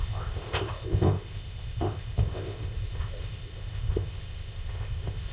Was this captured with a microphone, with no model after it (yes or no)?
no